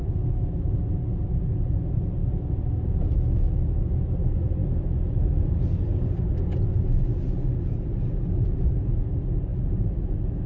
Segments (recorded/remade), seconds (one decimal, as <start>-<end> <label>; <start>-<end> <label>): 0.0-10.5 recorded